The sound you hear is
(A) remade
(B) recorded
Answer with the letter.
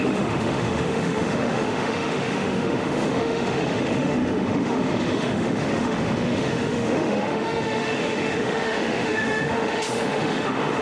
A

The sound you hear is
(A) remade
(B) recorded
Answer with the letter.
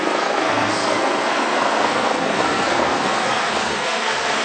A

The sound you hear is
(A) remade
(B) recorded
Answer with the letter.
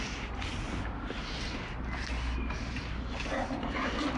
B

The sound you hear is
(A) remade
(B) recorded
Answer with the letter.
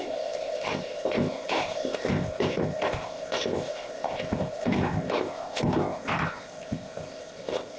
A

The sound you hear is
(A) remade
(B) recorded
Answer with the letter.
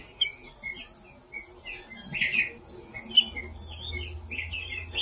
B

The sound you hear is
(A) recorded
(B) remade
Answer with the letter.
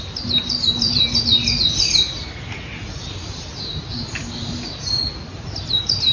A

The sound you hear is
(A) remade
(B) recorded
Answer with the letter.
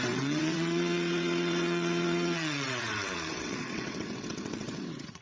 A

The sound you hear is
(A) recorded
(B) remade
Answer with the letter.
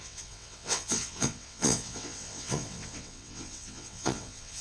B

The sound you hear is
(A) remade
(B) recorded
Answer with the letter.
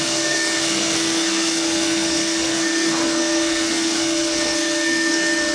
A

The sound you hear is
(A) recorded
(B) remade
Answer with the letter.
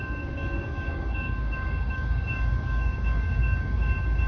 B